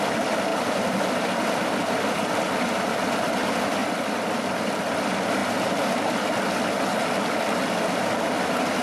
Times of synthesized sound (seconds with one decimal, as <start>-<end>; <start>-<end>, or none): 0.5-3.4